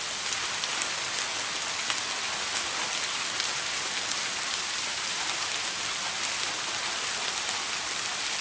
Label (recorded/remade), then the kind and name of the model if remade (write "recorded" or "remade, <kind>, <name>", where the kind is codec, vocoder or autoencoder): recorded